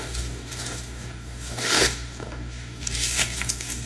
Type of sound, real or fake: fake